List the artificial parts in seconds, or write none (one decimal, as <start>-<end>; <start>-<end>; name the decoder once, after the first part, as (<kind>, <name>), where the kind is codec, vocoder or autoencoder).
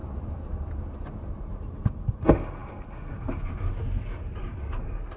none